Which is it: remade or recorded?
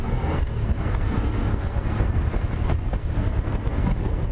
remade